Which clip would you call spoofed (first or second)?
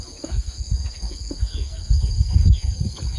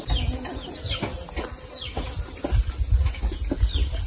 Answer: first